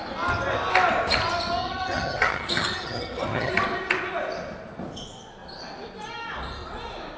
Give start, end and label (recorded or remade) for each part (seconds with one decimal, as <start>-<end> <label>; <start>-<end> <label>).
0.0-1.6 recorded; 1.6-3.5 remade; 3.5-7.2 recorded